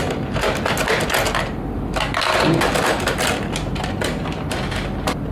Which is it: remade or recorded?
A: recorded